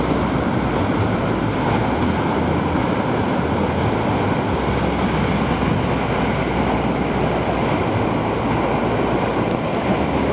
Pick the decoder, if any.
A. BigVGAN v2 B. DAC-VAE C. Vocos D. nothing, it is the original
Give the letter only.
D